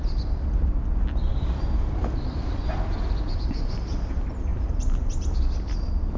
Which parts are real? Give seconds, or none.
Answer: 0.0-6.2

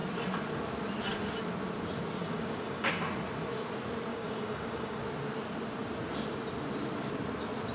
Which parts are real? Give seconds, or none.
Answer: 0.0-2.2; 2.9-4.1; 5.0-7.7